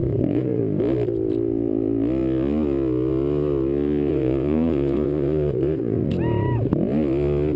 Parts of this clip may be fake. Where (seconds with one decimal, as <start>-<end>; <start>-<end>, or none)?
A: 0.0-0.6; 4.1-6.1